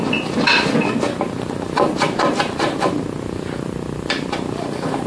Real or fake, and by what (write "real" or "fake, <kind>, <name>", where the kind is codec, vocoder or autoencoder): real